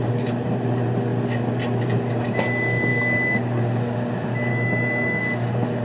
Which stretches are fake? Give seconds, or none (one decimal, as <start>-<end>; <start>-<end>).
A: 4.5-5.2